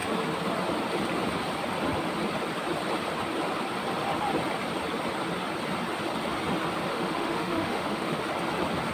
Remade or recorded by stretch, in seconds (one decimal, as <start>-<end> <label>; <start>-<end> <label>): 0.0-6.9 recorded; 6.9-8.2 remade; 8.2-8.9 recorded